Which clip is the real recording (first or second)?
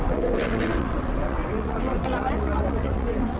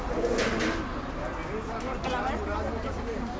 second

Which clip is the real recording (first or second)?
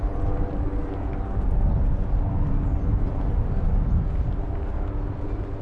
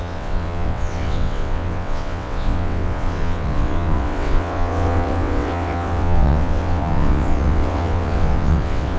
first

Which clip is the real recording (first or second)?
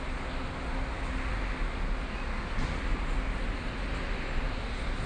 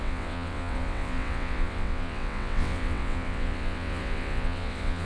first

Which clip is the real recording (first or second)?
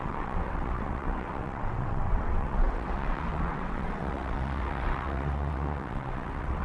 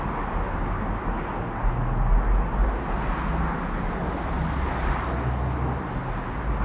second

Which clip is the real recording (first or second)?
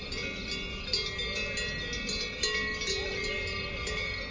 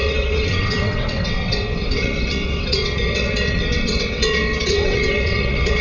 first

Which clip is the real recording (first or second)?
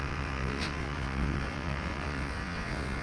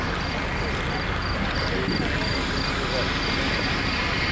second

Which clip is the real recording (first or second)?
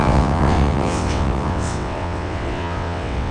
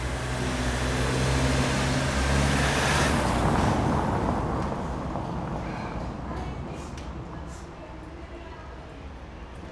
second